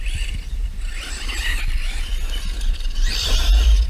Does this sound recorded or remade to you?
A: recorded